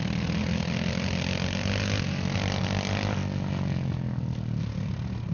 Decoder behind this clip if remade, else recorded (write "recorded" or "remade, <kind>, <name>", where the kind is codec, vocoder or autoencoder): recorded